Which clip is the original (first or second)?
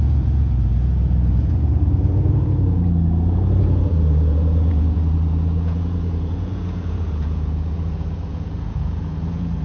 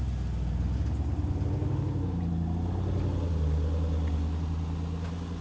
second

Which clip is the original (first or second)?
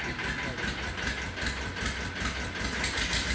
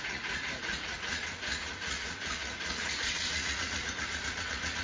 first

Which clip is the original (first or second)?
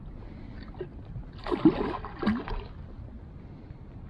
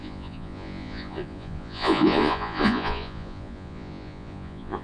first